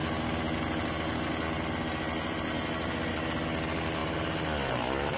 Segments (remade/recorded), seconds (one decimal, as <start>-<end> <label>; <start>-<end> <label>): 0.0-4.0 recorded; 4.0-4.7 remade; 4.7-5.2 recorded